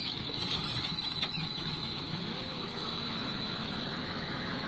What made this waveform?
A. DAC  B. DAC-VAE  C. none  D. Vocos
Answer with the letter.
B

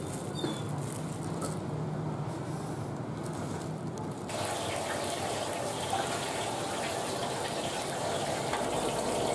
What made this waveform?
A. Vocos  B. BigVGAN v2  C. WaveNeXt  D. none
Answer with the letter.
D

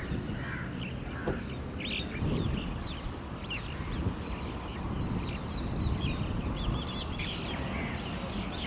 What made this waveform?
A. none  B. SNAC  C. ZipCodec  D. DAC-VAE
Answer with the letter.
A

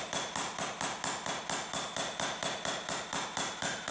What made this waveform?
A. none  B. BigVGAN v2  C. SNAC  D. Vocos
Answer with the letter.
A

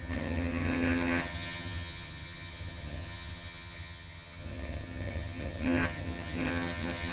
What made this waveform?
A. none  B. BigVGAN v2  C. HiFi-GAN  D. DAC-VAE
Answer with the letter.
C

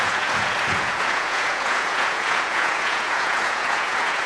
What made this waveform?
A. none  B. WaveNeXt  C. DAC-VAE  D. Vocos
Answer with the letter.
D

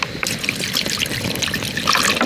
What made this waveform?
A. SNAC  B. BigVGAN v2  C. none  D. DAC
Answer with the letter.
C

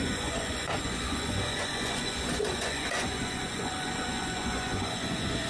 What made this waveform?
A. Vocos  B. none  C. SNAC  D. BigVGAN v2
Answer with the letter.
A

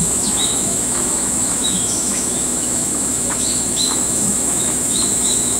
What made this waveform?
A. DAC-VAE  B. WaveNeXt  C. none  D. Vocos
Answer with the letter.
A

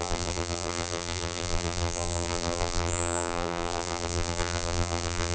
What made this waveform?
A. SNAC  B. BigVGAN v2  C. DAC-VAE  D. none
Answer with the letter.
B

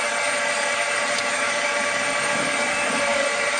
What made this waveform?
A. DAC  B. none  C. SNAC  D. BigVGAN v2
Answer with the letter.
A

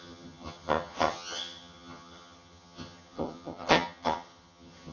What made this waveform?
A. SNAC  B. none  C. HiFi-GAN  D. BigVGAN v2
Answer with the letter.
C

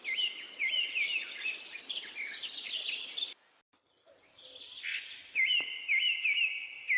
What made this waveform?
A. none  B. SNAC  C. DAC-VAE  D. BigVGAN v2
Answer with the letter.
A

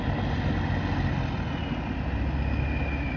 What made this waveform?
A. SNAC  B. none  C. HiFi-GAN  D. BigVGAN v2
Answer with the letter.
B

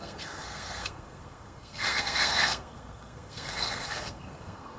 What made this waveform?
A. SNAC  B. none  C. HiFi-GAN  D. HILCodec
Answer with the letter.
A